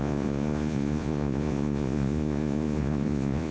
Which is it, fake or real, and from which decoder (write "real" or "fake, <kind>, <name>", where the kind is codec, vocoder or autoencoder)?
fake, vocoder, Vocos